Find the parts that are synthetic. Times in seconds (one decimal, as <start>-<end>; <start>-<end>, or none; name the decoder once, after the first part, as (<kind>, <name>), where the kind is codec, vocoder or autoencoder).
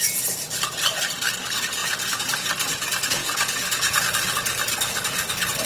1.8-2.5 (vocoder, Vocos); 3.2-4.0